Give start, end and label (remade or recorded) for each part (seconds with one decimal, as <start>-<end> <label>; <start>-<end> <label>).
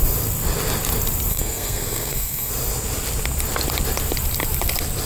0.0-1.3 recorded; 1.3-2.5 remade; 2.5-5.1 recorded